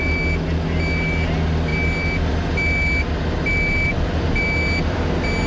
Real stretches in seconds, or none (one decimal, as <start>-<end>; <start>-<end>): 0.0-5.5